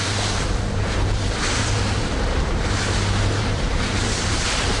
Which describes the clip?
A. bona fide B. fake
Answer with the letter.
B